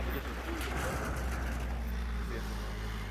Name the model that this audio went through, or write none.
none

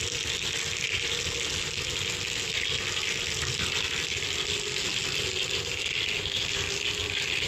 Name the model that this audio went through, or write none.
none